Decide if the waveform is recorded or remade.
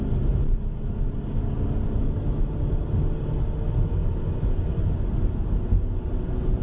recorded